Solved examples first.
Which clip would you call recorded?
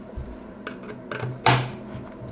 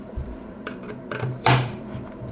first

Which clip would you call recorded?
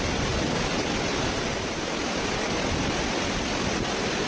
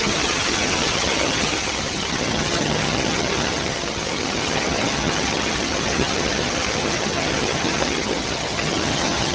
first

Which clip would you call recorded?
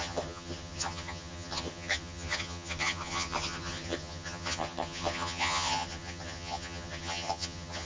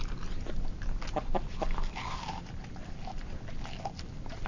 second